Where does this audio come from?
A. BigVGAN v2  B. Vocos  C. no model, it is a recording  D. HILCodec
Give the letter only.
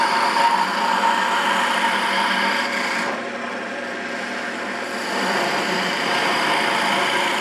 A